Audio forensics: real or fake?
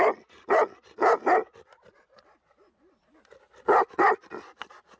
real